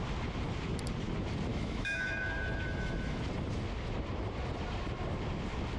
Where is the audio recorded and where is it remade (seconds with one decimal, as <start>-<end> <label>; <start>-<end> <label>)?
0.0-1.5 recorded; 1.5-3.2 remade; 3.2-5.8 recorded